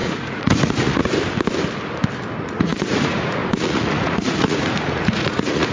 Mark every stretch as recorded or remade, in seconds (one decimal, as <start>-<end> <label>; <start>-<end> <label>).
0.0-1.1 remade; 1.1-2.4 recorded; 2.4-5.7 remade